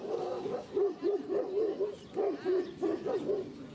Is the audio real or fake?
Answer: real